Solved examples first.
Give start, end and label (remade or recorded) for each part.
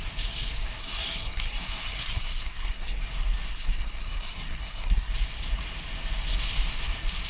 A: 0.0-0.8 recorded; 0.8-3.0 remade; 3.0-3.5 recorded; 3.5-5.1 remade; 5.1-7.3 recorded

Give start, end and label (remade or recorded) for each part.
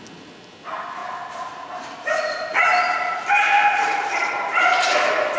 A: 0.0-1.0 recorded; 1.0-1.7 remade; 1.7-2.5 recorded; 2.5-4.3 remade; 4.3-5.4 recorded